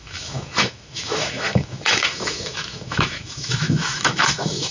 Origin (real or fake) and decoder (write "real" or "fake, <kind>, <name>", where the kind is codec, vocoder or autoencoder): fake, autoencoder, DAC-VAE